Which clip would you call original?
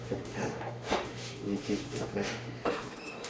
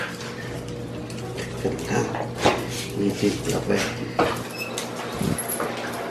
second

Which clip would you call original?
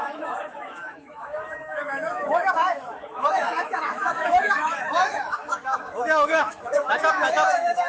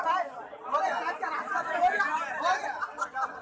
second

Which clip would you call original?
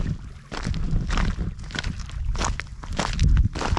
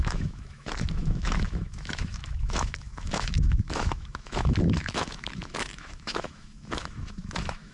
first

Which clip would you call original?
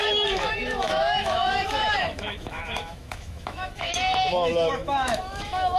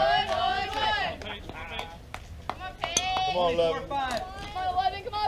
second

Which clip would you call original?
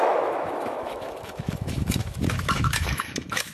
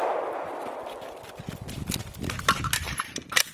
second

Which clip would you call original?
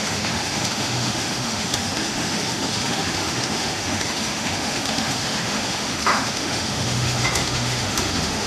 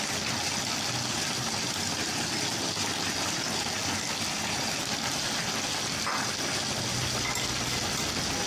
second